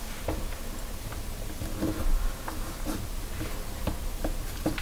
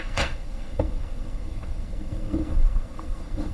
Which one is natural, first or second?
first